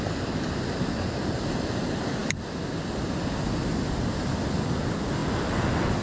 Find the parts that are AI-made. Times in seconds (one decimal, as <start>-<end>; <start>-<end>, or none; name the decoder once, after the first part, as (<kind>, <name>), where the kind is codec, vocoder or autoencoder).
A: none